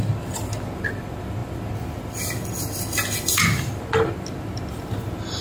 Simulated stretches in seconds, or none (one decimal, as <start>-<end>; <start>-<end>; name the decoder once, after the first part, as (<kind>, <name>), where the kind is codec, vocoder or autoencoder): none